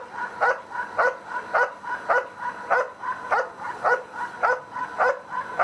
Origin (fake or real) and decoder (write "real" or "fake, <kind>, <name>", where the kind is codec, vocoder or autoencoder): real